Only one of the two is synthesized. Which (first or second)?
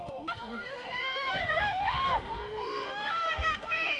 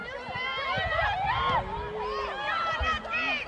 first